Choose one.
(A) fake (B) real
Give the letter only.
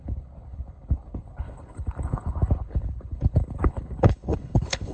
A